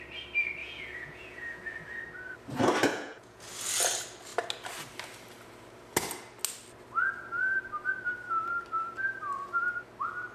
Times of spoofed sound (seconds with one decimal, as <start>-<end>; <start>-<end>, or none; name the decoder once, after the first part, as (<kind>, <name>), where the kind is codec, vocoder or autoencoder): 0.6-1.6 (vocoder, Vocos); 2.9-3.4